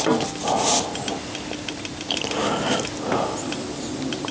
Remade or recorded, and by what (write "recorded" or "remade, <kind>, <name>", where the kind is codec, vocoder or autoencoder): recorded